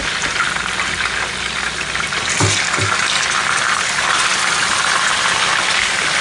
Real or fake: real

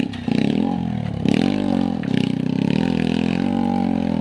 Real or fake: real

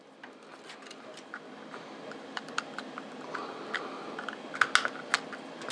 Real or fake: real